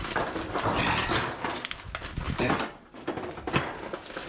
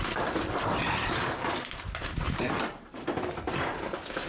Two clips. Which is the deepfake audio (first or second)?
second